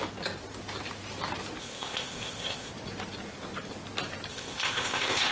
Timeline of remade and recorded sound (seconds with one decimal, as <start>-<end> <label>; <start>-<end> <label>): 0.0-1.6 recorded; 1.6-2.7 remade; 2.7-4.3 recorded; 4.3-5.3 remade